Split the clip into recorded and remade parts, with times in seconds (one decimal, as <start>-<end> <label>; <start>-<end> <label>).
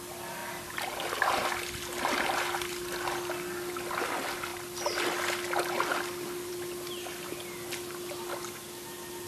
0.0-9.3 recorded